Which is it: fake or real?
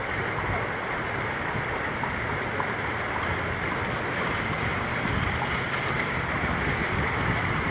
real